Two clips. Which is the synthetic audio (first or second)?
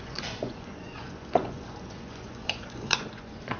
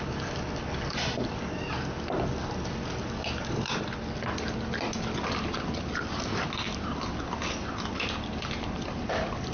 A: first